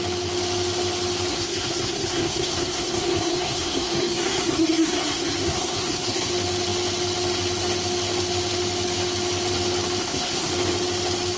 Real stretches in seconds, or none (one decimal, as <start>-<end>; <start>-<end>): 0.0-1.3; 6.3-10.0; 10.5-11.4